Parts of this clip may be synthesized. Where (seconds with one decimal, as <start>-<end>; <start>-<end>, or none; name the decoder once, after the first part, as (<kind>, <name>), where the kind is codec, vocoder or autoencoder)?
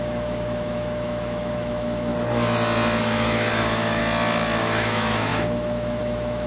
0.0-2.1 (autoencoder, DAC-VAE); 3.0-4.0; 4.6-6.5